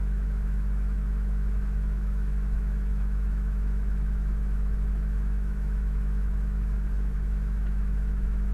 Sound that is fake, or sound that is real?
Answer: fake